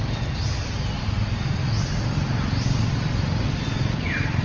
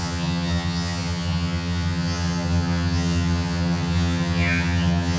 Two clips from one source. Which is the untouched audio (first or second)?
first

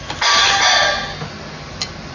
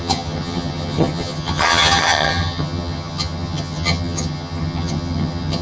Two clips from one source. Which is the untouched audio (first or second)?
first